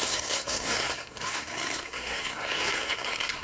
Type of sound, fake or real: fake